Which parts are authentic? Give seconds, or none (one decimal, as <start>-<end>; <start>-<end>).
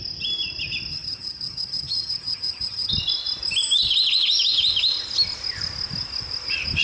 0.0-0.9; 2.9-6.8